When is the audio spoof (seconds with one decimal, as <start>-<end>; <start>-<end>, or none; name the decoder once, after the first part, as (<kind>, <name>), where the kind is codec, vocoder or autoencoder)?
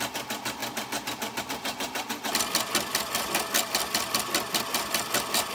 none